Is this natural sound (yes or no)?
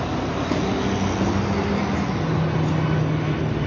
yes